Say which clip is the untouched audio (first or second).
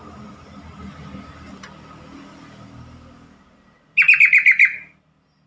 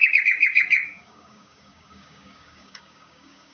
first